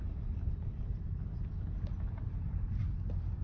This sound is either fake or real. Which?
real